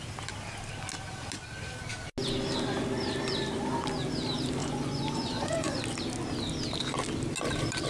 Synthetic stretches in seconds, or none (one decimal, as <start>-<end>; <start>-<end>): 4.6-5.8